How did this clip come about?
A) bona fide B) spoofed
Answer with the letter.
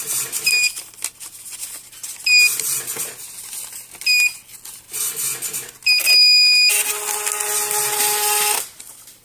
A